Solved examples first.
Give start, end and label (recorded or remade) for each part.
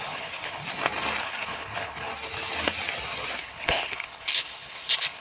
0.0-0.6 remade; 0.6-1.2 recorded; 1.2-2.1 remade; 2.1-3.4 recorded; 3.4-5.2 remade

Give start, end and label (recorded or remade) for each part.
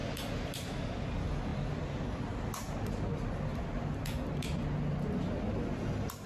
0.0-6.3 recorded